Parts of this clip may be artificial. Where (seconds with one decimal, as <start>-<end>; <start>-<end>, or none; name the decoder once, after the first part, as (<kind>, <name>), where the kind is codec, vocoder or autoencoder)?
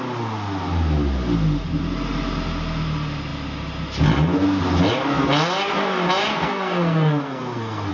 6.3-7.9 (codec, SNAC)